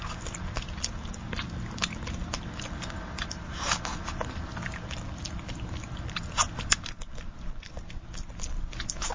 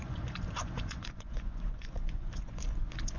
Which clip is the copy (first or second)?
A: second